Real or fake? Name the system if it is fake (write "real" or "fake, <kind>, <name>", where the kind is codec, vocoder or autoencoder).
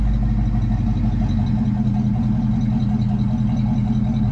real